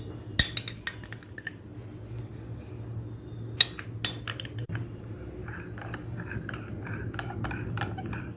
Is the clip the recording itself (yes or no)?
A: yes